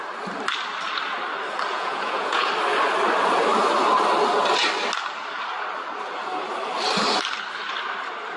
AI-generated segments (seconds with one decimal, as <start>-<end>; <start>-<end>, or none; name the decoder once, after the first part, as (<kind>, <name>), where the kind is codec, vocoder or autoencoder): 1.7-2.5 (vocoder, Vocos)